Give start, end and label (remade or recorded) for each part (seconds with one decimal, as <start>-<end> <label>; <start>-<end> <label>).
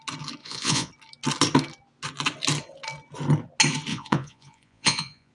0.0-0.4 recorded; 0.4-0.9 remade; 0.9-3.9 recorded; 3.9-5.3 remade